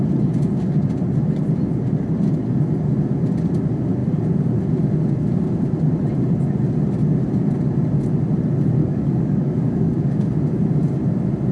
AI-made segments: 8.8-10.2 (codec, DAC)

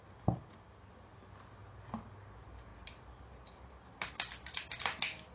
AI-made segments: none

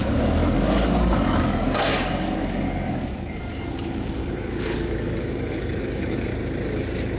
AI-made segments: 0.0-6.3 (codec, DAC)

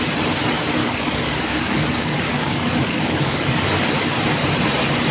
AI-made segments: 0.8-3.9 (codec, DAC)

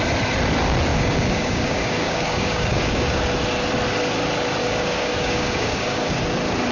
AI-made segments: 0.9-3.2 (codec, DAC); 4.6-6.2

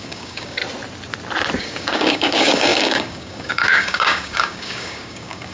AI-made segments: 0.0-0.6 (codec, DAC); 1.6-5.5

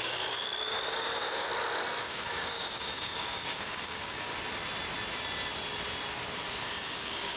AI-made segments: 0.0-1.5 (codec, DAC); 2.0-4.3; 6.7-7.4